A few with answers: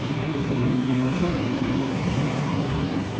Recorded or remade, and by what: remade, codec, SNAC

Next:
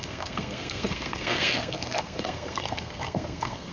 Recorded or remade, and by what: remade, codec, SNAC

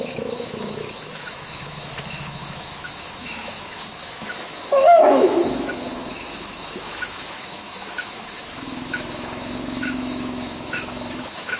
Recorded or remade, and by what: remade, autoencoder, DAC-VAE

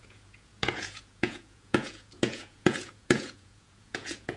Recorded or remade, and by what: remade, vocoder, Vocos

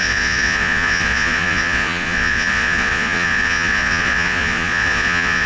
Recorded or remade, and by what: remade, vocoder, Vocos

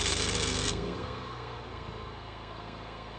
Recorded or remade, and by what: remade, codec, SNAC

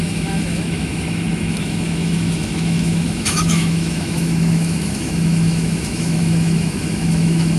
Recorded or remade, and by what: remade, autoencoder, DAC-VAE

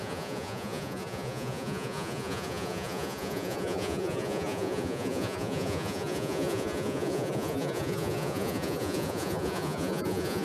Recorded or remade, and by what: remade, vocoder, Vocos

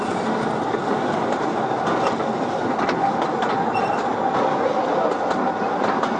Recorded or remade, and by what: recorded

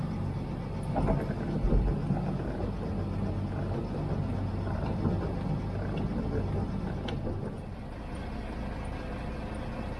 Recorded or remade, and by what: recorded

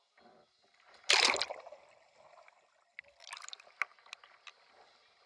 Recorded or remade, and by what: recorded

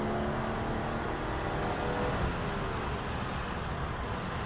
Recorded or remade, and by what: recorded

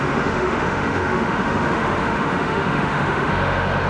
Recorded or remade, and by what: remade, autoencoder, DAC-VAE